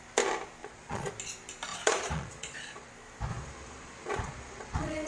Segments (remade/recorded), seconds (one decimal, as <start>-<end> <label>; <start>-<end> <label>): 0.0-0.6 recorded; 0.6-1.1 remade; 1.1-1.7 recorded; 1.7-2.9 remade; 2.9-3.3 recorded; 3.3-5.1 remade